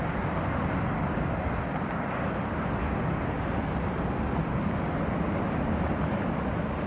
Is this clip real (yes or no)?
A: yes